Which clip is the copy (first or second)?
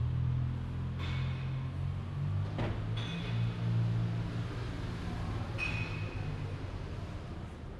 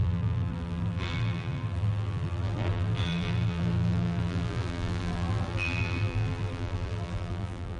second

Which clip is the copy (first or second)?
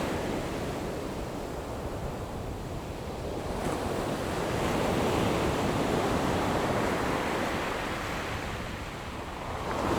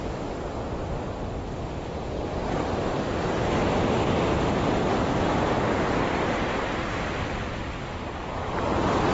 first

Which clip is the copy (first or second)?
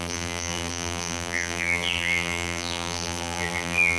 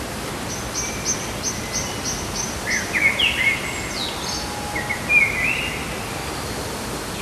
first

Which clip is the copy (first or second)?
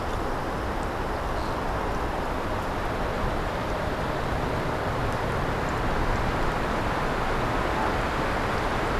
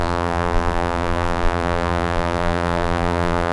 second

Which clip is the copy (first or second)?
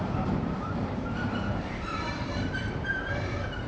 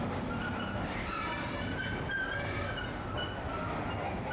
first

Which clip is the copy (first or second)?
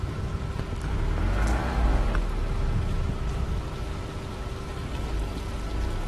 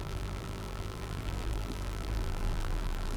second